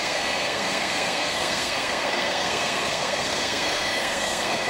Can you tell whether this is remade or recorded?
remade